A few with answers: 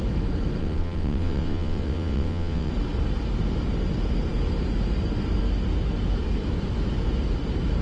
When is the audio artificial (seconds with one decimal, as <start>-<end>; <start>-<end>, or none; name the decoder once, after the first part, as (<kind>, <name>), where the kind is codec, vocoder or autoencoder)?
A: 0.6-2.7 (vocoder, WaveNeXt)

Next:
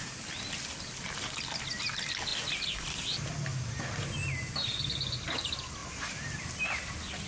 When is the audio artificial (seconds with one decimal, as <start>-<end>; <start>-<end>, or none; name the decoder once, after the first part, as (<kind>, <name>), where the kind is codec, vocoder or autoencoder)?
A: none

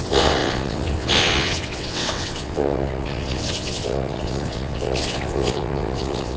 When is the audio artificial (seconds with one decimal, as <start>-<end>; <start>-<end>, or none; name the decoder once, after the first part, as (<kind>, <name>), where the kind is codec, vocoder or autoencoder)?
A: 0.0-6.4 (vocoder, WaveNeXt)

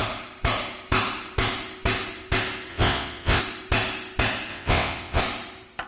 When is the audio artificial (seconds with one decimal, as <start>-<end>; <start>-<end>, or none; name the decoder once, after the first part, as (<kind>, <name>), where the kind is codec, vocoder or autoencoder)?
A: 2.7-3.4 (vocoder, WaveNeXt); 4.5-5.2

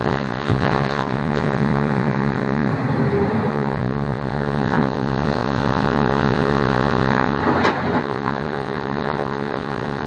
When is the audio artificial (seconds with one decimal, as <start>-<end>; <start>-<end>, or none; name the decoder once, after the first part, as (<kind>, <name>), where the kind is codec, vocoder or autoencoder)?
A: 0.0-2.7 (vocoder, WaveNeXt); 3.5-7.4; 8.0-10.1